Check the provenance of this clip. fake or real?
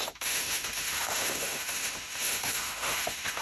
fake